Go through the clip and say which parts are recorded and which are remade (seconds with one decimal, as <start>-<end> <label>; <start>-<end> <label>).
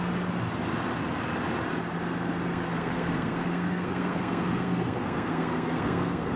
0.0-2.5 recorded; 2.5-6.4 remade